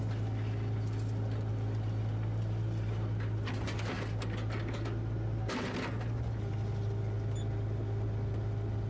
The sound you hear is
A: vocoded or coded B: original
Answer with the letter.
B